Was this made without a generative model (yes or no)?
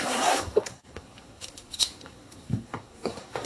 no